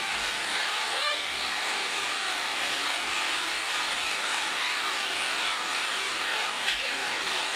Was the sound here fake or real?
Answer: fake